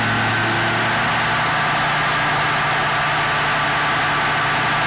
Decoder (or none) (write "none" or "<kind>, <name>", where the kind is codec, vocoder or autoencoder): none